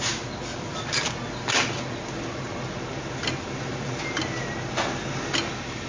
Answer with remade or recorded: recorded